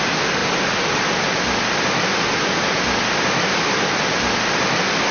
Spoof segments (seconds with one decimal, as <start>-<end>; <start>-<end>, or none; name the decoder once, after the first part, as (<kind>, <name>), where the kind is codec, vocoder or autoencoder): none